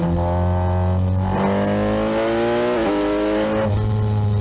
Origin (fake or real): real